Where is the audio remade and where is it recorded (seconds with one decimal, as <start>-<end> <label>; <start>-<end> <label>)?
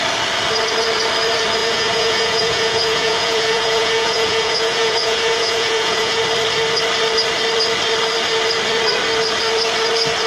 0.0-1.6 recorded; 1.6-6.2 remade; 6.2-10.3 recorded